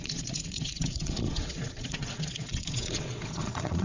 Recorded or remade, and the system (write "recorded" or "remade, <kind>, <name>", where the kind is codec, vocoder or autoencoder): remade, vocoder, Vocos